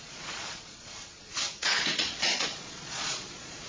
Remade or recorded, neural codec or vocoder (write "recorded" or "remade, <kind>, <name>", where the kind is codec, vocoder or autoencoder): remade, vocoder, Vocos